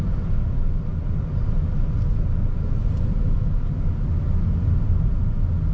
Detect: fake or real real